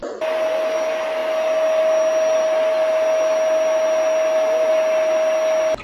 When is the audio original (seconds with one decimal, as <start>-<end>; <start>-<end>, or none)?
0.0-5.8